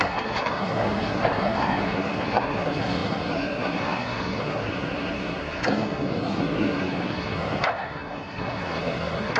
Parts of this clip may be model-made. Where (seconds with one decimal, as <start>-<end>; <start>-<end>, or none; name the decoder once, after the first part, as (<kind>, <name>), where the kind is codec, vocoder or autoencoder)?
0.0-9.4 (codec, SNAC)